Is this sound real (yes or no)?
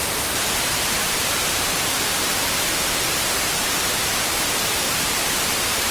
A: no